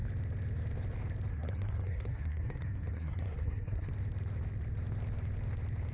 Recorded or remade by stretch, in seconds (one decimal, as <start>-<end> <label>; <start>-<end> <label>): 0.0-1.3 recorded; 1.3-3.9 remade; 3.9-5.9 recorded